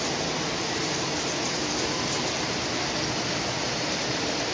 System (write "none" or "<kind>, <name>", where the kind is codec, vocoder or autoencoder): none